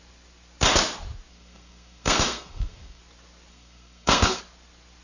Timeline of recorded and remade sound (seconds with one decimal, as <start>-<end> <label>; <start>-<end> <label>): 0.0-1.3 recorded; 1.3-3.0 remade; 3.0-3.5 recorded; 3.5-4.4 remade; 4.4-5.0 recorded